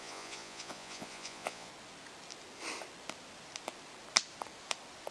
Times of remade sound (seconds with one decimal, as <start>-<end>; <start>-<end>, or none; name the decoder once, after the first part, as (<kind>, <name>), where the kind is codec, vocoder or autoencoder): 0.0-1.7 (vocoder, Vocos)